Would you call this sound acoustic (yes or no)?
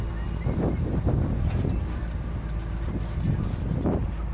yes